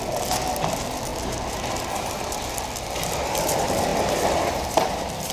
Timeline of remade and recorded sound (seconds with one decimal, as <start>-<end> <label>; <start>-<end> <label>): 0.0-1.1 remade; 1.1-2.0 recorded; 2.0-5.3 remade